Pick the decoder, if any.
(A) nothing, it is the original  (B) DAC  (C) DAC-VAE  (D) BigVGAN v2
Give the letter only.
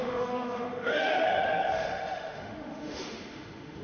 C